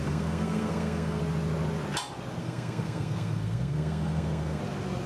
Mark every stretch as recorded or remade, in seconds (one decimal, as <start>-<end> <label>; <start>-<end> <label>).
0.0-1.2 remade; 1.2-2.4 recorded; 2.4-4.6 remade; 4.6-5.1 recorded